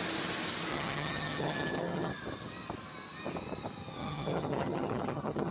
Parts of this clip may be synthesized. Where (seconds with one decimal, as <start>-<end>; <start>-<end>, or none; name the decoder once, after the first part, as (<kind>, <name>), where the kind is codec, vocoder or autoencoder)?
0.7-2.1 (vocoder, HiFi-GAN); 4.0-5.5